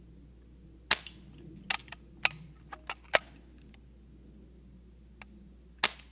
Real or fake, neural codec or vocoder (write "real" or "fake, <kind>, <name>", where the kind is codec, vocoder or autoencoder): real